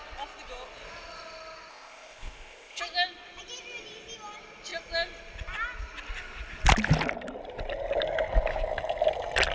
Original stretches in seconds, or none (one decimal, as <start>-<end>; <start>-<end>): 0.0-1.7; 2.8-9.5